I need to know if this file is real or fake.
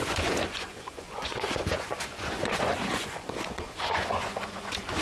fake